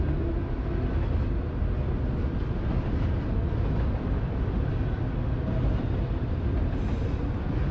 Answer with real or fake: real